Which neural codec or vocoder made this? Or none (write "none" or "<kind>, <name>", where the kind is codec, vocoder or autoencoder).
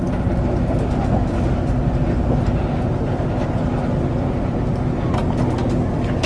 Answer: none